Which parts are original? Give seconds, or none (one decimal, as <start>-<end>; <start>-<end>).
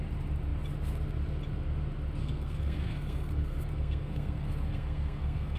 0.0-2.2